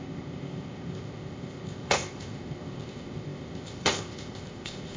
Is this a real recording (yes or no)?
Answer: no